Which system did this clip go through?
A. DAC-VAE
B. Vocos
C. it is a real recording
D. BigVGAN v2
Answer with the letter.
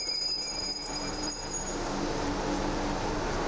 D